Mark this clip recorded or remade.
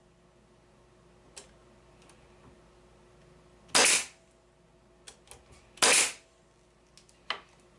recorded